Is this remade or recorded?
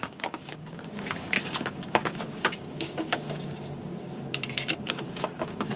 remade